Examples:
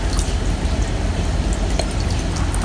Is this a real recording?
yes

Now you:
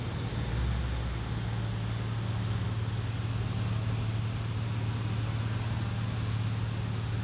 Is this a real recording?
yes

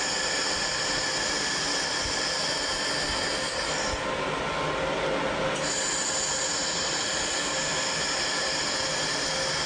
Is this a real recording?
yes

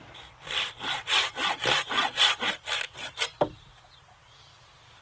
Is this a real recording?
yes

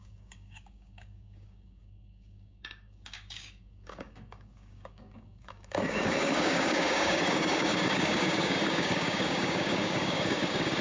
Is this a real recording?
no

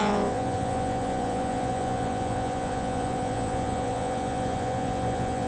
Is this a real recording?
no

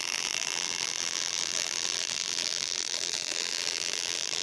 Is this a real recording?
no